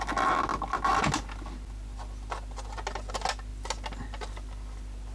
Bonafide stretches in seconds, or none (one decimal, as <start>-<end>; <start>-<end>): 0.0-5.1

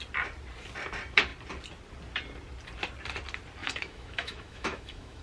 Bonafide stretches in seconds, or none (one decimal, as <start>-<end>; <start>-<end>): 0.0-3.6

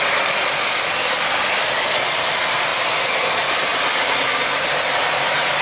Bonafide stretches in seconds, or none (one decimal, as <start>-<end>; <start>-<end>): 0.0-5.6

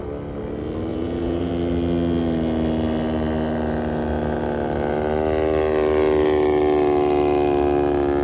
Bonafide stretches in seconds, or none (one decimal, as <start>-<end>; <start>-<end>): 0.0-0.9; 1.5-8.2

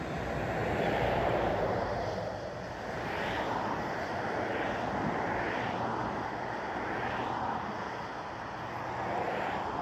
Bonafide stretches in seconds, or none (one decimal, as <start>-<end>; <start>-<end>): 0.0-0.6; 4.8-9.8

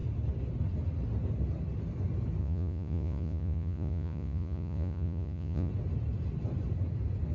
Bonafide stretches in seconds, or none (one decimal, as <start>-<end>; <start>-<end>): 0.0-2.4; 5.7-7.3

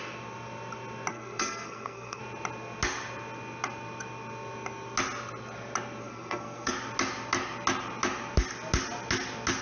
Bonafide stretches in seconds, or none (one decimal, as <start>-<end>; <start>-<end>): 0.0-1.1; 2.2-6.0; 6.7-9.6

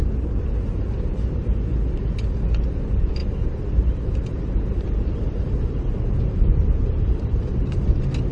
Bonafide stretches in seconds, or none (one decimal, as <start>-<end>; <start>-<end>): 0.0-3.2; 5.9-6.5; 7.8-8.3